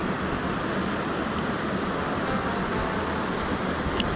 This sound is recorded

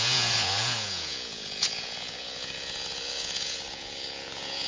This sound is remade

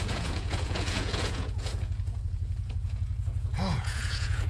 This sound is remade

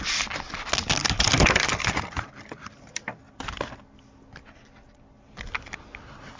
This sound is recorded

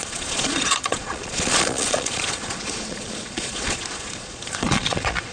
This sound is remade